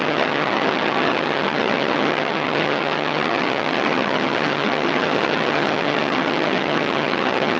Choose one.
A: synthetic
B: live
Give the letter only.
A